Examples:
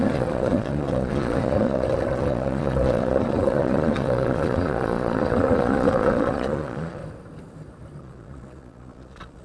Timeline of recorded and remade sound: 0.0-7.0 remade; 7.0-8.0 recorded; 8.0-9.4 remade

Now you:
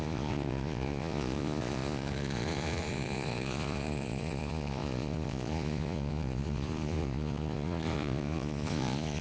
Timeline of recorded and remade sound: 0.0-9.2 remade

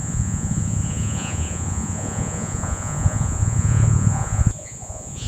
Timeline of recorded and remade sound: 0.0-5.3 remade

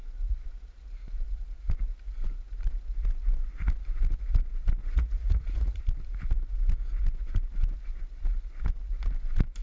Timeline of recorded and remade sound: 0.0-4.8 recorded; 4.8-5.8 remade; 5.8-9.6 recorded

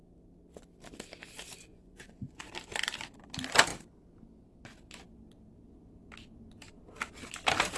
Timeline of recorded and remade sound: 0.0-1.7 recorded; 1.7-2.5 remade; 2.5-7.8 recorded

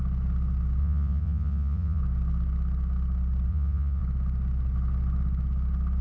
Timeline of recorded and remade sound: 0.0-0.8 recorded; 0.8-2.0 remade; 2.0-3.5 recorded; 3.5-4.0 remade; 4.0-6.0 recorded